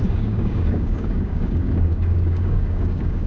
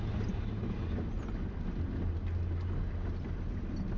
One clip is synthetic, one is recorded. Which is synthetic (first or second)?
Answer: first